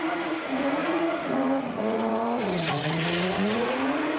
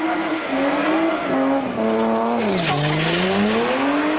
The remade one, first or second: first